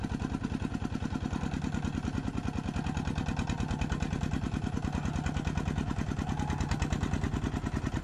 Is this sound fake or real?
real